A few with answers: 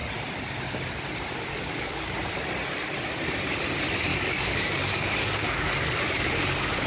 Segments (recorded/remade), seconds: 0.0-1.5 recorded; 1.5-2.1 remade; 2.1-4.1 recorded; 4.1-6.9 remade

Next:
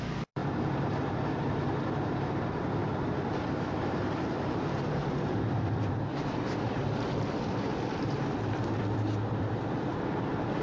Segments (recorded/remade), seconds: 0.0-10.6 remade

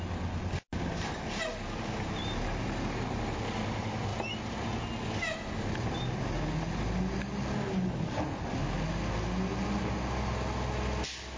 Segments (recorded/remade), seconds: 0.0-11.4 recorded

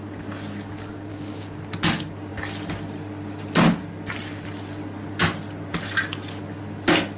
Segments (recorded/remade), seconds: 0.0-1.1 recorded; 1.1-1.6 remade; 1.6-7.2 recorded

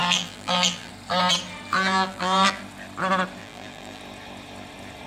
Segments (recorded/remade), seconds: 0.0-0.9 remade; 0.9-1.7 recorded; 1.7-2.6 remade; 2.6-3.4 recorded; 3.4-4.0 remade; 4.0-5.1 recorded

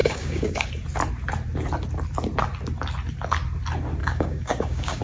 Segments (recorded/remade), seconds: 0.0-0.7 remade; 0.7-4.0 recorded; 4.0-5.0 remade

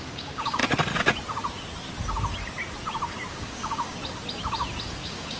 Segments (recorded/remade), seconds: 0.0-0.6 remade; 0.6-3.3 recorded; 3.3-4.0 remade; 4.0-5.0 recorded; 5.0-5.4 remade